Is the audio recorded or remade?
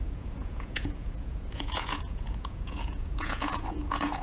remade